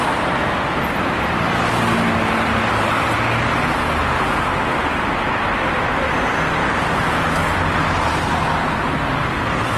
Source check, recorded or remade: recorded